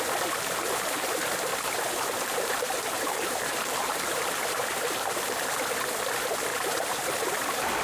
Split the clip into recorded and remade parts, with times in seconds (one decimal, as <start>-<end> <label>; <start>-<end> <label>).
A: 0.0-1.5 recorded; 1.5-5.0 remade; 5.0-6.5 recorded; 6.5-7.1 remade; 7.1-7.8 recorded